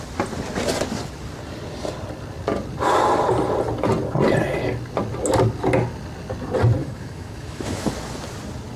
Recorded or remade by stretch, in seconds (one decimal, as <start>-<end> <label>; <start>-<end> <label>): 0.0-6.8 recorded; 6.8-7.9 remade; 7.9-8.8 recorded